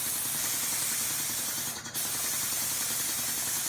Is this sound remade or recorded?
recorded